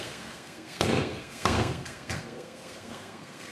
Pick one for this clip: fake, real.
fake